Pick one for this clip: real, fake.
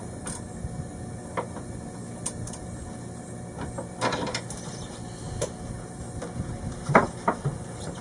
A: real